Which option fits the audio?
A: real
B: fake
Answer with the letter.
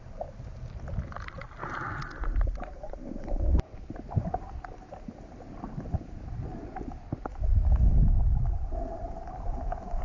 A